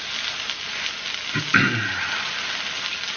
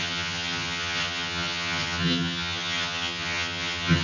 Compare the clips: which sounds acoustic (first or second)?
first